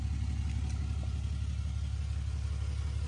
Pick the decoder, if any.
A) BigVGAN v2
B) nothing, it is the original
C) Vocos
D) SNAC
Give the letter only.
B